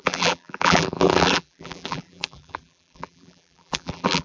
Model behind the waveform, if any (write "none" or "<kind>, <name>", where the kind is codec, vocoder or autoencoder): vocoder, BigVGAN v2